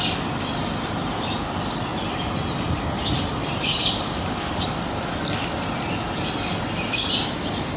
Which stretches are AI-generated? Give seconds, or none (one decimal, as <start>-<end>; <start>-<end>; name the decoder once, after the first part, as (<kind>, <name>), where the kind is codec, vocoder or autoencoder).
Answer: none

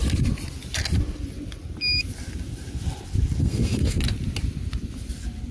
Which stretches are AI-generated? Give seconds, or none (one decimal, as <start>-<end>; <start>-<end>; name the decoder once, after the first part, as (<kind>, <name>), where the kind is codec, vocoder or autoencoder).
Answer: 3.4-4.0 (codec, SNAC)

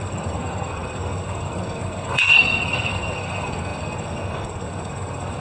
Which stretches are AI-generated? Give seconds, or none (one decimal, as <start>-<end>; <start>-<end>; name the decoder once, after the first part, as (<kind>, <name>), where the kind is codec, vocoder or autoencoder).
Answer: 0.0-5.4 (codec, SNAC)

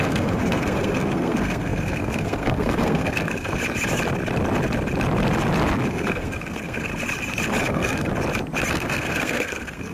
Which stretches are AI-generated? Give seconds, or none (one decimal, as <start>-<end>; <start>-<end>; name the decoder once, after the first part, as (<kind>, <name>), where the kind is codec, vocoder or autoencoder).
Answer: 0.0-3.6 (codec, SNAC); 5.9-6.9; 7.6-8.1; 8.7-9.9